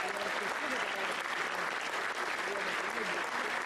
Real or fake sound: real